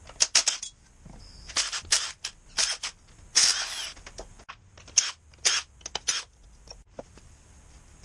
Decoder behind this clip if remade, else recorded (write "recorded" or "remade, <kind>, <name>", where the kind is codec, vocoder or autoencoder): recorded